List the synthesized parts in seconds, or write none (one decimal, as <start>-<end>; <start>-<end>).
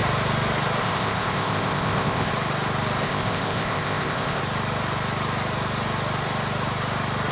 0.8-2.3; 3.0-4.4